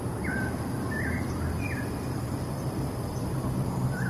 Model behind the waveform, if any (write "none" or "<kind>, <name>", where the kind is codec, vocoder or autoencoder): vocoder, BigVGAN v2